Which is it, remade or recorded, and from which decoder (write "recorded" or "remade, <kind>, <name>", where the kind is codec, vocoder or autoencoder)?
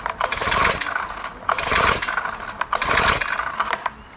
recorded